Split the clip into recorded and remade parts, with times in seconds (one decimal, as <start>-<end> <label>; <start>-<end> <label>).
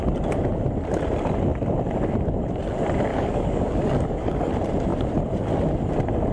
0.0-3.1 recorded; 3.1-4.5 remade; 4.5-6.3 recorded